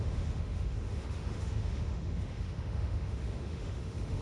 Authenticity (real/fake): fake